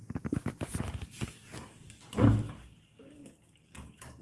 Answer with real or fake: fake